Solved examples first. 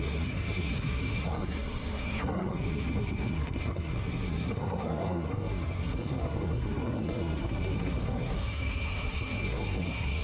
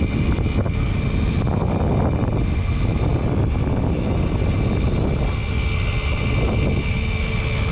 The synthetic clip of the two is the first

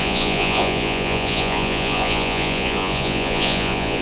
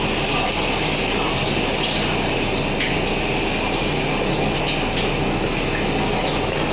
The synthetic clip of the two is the first